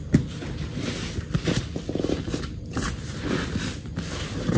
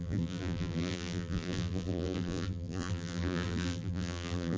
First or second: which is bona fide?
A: first